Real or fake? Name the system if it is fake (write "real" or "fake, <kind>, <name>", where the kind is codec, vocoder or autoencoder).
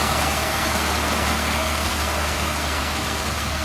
fake, codec, SNAC